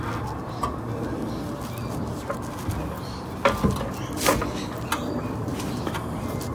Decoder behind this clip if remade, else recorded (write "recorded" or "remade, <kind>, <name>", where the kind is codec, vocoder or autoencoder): recorded